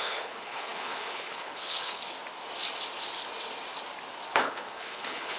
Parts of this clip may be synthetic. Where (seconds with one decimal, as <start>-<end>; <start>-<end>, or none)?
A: 0.0-2.0; 4.3-5.4